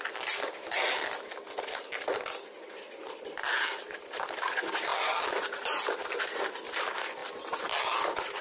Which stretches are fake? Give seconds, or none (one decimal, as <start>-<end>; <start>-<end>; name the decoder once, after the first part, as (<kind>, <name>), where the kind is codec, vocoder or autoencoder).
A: none